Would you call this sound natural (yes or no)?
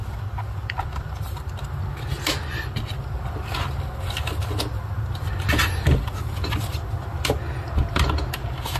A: yes